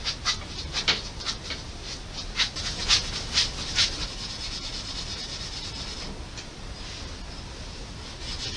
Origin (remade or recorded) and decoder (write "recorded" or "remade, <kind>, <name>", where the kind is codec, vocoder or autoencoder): recorded